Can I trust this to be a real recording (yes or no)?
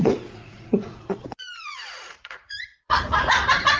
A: no